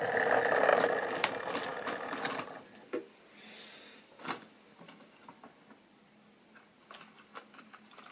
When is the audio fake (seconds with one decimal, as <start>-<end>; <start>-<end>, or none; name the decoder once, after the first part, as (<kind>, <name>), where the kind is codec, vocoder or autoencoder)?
none